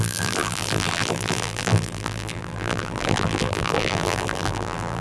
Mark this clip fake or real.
fake